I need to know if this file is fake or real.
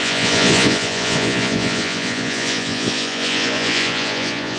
fake